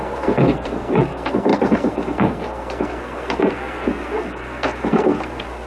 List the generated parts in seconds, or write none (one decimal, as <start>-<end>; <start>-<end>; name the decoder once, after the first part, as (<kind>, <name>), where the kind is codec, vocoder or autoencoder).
0.0-5.7 (codec, SNAC)